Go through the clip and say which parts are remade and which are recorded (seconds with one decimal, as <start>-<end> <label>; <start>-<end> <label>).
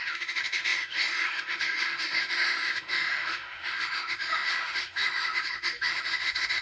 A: 0.0-6.6 remade